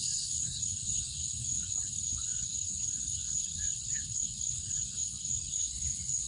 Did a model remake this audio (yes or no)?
yes